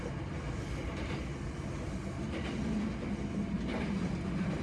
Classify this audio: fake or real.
real